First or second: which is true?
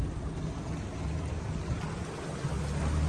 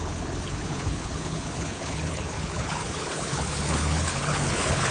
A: first